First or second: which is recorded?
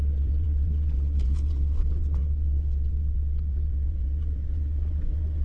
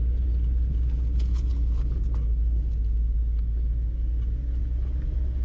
second